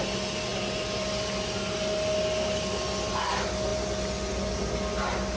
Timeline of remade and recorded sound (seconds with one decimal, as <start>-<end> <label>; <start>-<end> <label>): 0.0-5.4 recorded